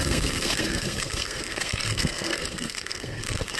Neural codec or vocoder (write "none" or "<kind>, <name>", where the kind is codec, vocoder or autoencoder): codec, SNAC